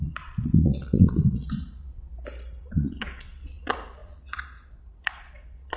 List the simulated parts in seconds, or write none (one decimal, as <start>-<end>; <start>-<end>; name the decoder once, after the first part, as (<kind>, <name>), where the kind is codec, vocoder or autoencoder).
0.0-2.1 (vocoder, Vocos); 2.6-5.8